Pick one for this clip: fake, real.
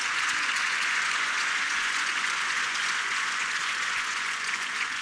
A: fake